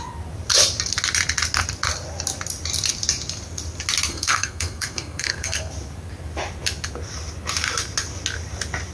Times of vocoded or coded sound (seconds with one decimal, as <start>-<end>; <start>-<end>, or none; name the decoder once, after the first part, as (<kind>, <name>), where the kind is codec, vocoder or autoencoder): 4.1-5.7 (codec, SNAC)